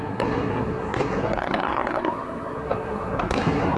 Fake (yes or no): yes